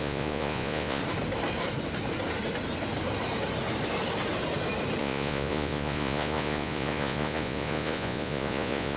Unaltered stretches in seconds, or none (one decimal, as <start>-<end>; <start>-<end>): 1.0-5.0